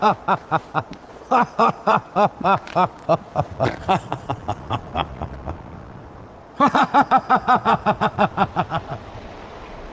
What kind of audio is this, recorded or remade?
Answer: remade